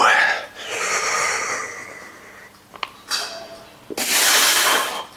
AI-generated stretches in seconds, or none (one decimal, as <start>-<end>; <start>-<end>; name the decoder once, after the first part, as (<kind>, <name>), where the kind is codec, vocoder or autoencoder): 4.3-5.2 (vocoder, BigVGAN v2)